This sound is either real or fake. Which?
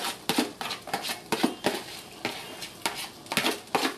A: real